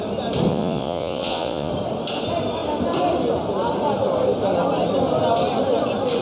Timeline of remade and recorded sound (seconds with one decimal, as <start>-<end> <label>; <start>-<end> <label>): 0.0-0.5 recorded; 0.5-1.7 remade; 1.7-6.2 recorded